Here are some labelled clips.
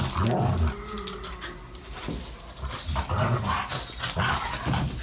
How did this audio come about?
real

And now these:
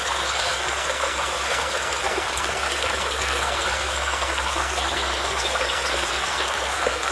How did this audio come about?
fake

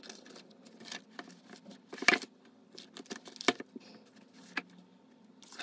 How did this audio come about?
real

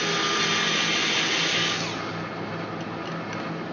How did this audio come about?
real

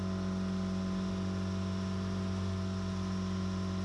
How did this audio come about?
real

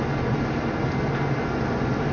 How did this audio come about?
real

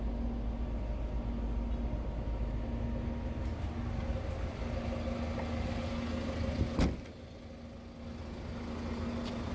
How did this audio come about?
real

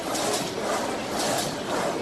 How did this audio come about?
real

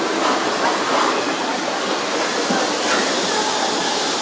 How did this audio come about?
real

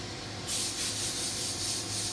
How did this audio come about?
real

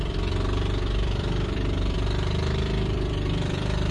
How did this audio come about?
fake